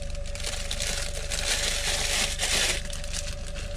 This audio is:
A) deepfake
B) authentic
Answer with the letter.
A